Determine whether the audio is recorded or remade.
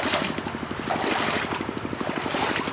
recorded